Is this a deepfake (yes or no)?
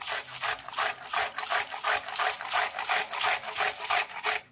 no